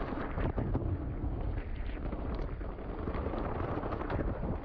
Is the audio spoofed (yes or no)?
no